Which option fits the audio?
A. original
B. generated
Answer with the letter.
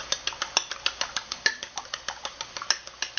A